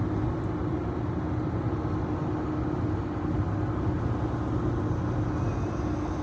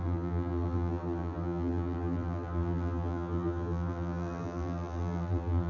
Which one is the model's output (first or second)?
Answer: second